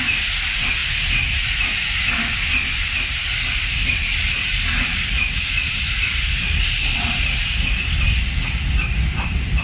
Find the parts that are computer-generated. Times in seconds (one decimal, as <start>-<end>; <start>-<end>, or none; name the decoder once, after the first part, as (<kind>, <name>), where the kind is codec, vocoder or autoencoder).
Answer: none

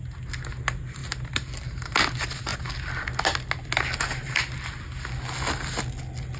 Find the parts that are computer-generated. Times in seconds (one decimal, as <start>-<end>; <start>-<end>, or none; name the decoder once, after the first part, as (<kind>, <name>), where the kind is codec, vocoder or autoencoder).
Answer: none

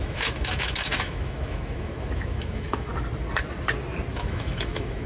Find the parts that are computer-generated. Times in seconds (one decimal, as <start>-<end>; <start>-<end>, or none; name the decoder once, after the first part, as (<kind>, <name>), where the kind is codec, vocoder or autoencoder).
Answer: 0.0-2.9 (autoencoder, DAC-VAE); 4.1-5.1